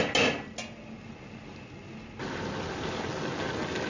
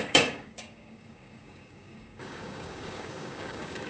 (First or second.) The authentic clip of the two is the first